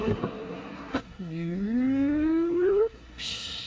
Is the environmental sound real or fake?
fake